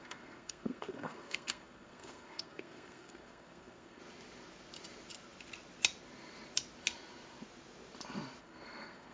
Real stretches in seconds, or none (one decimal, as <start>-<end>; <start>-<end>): 4.0-8.4